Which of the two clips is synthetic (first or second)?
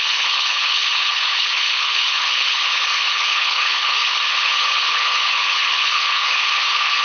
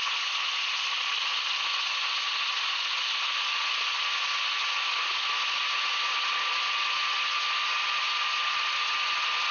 first